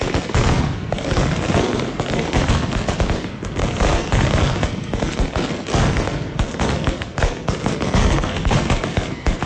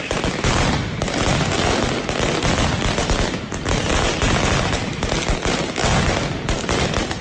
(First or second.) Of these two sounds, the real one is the second